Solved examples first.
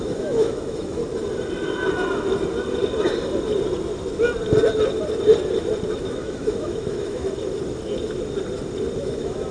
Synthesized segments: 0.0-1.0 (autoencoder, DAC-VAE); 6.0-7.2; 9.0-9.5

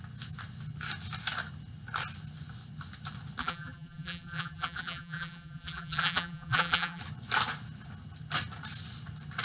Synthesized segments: 3.4-7.0 (vocoder, BigVGAN v2)

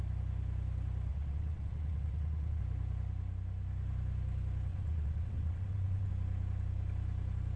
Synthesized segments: 1.1-2.6 (vocoder, WaveNeXt); 4.7-6.1

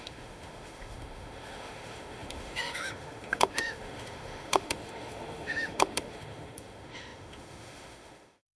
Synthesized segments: 0.0-8.6 (autoencoder, DAC-VAE)

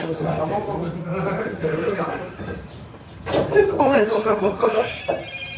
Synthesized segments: 0.0-0.4 (codec, SNAC); 1.4-2.2; 3.8-5.0

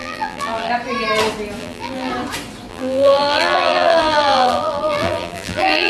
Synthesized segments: 0.0-0.7 (vocoder, BigVGAN v2); 1.6-2.1; 2.7-5.9

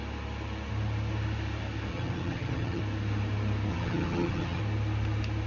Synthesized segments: 1.9-2.8 (vocoder, HiFi-GAN); 3.7-4.6